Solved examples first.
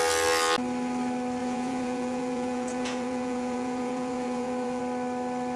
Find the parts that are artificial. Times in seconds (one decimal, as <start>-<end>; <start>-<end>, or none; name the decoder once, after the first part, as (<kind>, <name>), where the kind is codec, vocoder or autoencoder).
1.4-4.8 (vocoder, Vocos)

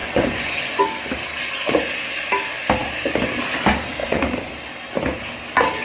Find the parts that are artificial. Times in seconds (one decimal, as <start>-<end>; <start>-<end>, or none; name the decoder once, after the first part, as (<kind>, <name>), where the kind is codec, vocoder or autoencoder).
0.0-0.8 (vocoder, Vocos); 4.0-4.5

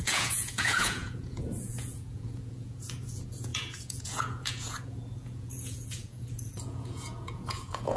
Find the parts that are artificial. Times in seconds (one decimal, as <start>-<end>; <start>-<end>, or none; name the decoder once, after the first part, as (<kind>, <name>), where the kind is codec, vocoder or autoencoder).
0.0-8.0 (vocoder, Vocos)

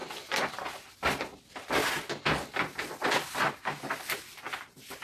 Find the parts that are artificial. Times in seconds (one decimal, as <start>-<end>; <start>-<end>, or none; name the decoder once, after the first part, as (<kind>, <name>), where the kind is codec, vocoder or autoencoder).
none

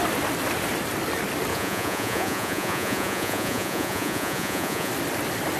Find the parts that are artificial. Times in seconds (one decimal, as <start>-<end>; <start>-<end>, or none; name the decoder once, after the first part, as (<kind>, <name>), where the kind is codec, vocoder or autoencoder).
1.5-4.9 (vocoder, Vocos)

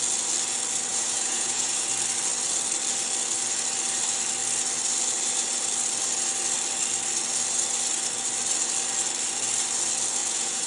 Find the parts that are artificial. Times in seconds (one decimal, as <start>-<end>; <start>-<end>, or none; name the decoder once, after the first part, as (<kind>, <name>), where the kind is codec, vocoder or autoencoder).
0.9-1.9 (vocoder, Vocos); 10.2-10.7

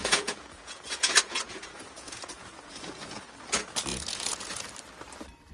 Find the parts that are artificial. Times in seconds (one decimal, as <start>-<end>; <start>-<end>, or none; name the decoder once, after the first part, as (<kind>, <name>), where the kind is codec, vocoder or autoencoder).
0.0-3.3 (vocoder, Vocos); 3.9-4.7